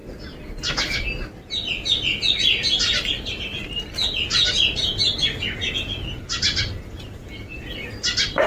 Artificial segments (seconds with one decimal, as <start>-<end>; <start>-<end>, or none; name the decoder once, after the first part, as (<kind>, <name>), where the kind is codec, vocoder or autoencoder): none